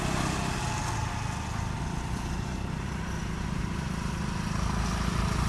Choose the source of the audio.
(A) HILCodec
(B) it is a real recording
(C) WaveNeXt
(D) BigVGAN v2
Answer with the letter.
B